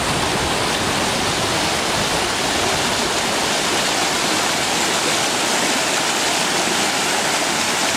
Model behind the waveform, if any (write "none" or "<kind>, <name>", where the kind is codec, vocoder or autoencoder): none